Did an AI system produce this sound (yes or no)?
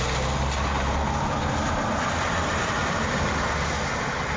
no